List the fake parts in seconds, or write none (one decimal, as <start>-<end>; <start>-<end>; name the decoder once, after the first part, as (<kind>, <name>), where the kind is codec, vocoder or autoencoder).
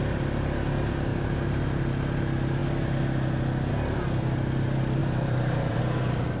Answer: 1.1-1.6 (vocoder, BigVGAN v2); 5.0-5.8